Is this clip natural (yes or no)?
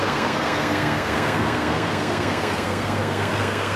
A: no